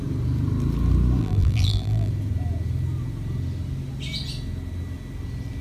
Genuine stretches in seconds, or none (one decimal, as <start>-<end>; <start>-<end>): 0.0-1.2; 2.1-5.6